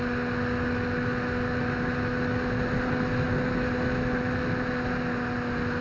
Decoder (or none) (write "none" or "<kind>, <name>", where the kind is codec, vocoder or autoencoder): none